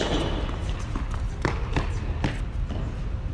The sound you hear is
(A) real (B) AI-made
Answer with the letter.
A